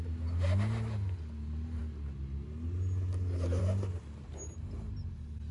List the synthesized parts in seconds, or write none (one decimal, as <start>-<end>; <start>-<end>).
none